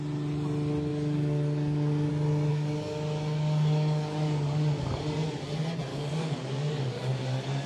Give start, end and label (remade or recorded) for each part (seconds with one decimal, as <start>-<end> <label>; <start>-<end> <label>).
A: 0.0-0.9 recorded; 0.9-2.1 remade; 2.1-2.5 recorded; 2.5-5.0 remade; 5.0-5.9 recorded; 5.9-7.7 remade